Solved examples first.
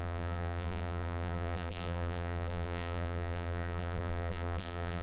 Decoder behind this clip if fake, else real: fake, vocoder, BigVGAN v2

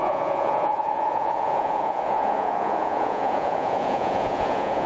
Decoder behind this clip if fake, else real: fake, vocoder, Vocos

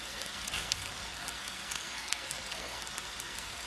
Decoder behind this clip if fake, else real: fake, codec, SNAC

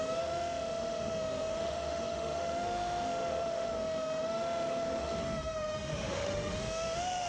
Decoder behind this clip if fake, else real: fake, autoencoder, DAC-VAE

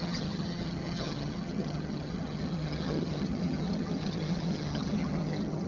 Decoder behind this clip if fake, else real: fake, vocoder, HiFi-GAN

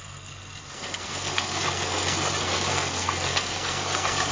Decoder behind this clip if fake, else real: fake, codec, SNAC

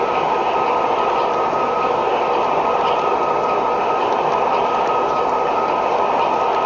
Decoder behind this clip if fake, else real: real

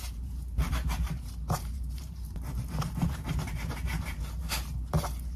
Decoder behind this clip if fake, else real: fake, vocoder, BigVGAN v2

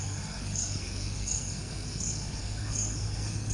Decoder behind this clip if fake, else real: fake, codec, SNAC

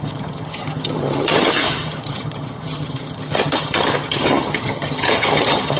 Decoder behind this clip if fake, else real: fake, vocoder, HiFi-GAN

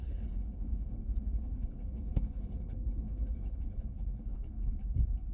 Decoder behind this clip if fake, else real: fake, codec, HILCodec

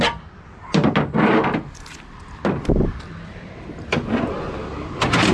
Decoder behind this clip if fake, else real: real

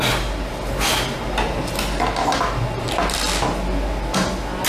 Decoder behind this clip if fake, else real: real